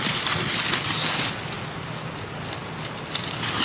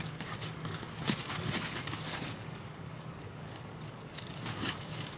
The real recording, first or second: first